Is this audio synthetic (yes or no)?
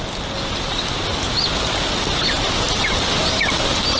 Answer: no